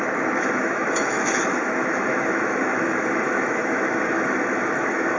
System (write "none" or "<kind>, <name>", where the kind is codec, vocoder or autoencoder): autoencoder, DAC-VAE